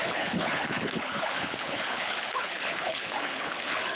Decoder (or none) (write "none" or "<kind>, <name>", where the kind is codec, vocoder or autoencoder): codec, HILCodec